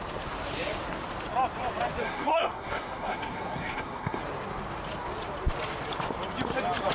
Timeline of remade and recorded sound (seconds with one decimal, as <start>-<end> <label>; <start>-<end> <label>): 0.0-2.0 recorded; 2.0-4.2 remade; 4.2-6.9 recorded